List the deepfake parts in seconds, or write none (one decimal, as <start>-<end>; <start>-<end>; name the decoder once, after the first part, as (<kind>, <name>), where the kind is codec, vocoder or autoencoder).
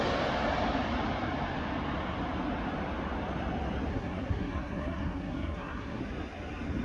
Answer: 3.9-6.0 (codec, SNAC)